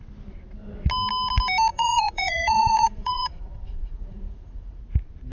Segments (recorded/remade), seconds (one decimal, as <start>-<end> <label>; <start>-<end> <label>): 0.0-1.7 recorded; 1.7-4.8 remade; 4.8-5.3 recorded